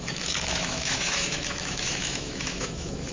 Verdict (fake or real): fake